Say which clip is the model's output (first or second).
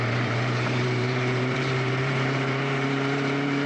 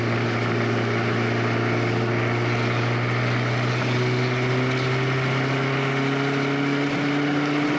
first